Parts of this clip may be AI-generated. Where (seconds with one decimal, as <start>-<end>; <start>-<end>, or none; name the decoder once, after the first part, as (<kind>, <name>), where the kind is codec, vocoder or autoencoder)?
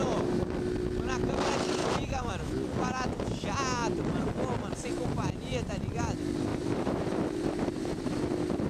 1.8-2.3 (vocoder, BigVGAN v2); 6.5-8.2